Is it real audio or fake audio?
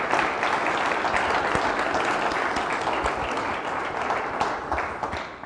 real